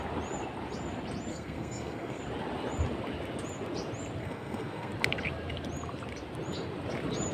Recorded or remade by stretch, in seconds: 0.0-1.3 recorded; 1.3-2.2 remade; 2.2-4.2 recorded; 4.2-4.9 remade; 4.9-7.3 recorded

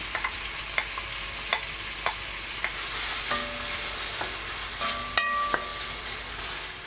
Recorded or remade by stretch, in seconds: 0.0-6.9 recorded

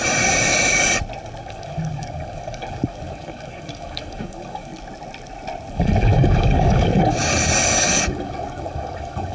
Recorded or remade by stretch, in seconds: 0.0-1.4 recorded; 1.4-4.7 remade; 4.7-5.7 recorded; 5.7-9.3 remade

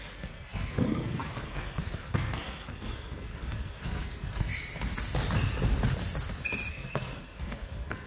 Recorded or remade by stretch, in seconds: 0.0-4.5 remade; 4.5-6.7 recorded; 6.7-8.1 remade

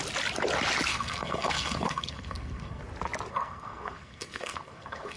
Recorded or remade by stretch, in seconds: 0.0-0.9 recorded; 0.9-2.8 remade; 2.8-3.3 recorded; 3.3-5.2 remade

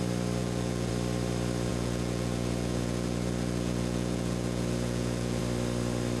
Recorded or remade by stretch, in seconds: 0.0-0.4 recorded; 0.4-0.9 remade; 0.9-1.7 recorded; 1.7-5.4 remade; 5.4-6.2 recorded